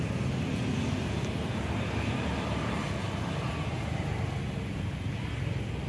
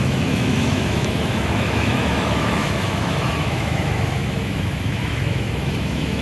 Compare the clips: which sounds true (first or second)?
first